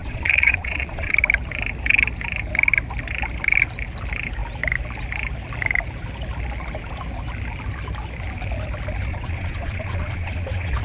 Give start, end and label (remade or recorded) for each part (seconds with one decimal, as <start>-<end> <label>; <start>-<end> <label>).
0.0-1.1 remade; 1.1-9.1 recorded; 9.1-10.8 remade